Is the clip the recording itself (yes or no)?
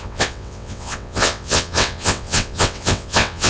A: no